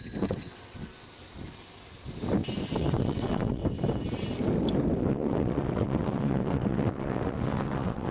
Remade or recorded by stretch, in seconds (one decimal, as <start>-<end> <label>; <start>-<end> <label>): 0.0-0.9 remade; 0.9-2.6 recorded; 2.6-3.6 remade; 3.6-5.0 recorded; 5.0-8.1 remade